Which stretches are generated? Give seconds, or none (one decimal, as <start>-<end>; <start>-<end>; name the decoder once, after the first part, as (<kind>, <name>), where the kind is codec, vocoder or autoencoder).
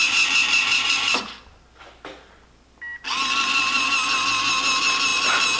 none